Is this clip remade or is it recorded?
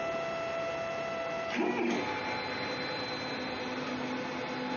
recorded